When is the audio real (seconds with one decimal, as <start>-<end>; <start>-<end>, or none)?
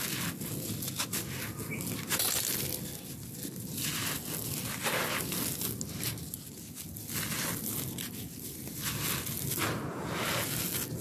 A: 0.0-11.0